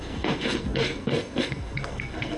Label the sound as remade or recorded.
remade